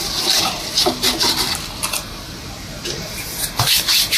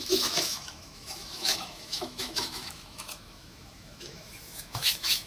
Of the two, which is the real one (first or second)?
first